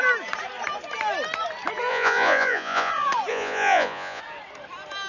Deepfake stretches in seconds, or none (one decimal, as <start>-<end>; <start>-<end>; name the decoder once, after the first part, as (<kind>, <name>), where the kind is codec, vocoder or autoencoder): 1.9-2.9 (vocoder, Vocos); 3.3-4.2